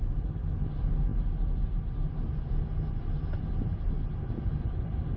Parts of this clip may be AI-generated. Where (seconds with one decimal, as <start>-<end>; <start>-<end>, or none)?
none